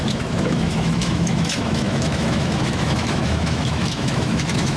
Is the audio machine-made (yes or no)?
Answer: yes